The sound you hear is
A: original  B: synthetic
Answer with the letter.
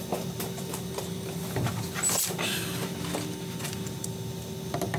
A